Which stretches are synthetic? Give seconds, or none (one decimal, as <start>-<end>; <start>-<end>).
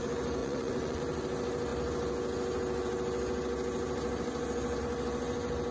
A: 0.4-1.0